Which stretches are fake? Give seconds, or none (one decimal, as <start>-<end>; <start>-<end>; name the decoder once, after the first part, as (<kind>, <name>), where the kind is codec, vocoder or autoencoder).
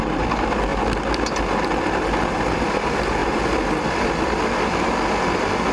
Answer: 3.2-4.4 (vocoder, BigVGAN v2)